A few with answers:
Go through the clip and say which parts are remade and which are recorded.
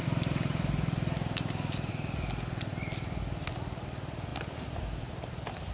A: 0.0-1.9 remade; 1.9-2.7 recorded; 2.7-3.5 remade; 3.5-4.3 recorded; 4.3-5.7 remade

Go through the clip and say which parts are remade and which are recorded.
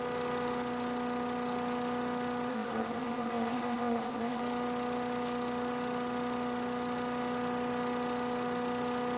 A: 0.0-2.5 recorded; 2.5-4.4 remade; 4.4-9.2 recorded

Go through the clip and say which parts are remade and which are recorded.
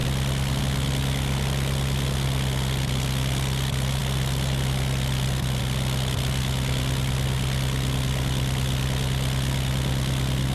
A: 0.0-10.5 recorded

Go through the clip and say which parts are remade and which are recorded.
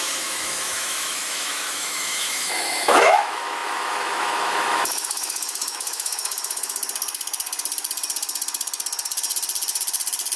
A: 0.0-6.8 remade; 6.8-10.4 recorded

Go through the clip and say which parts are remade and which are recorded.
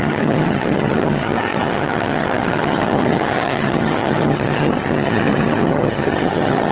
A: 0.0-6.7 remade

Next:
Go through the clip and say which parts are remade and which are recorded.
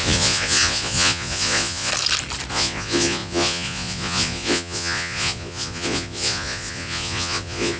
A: 0.0-1.9 remade; 1.9-2.5 recorded; 2.5-7.8 remade